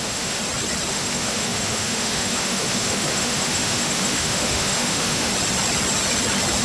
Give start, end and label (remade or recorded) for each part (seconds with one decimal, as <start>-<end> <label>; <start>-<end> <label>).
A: 0.0-0.4 remade; 0.4-0.9 recorded; 0.9-5.3 remade; 5.3-6.6 recorded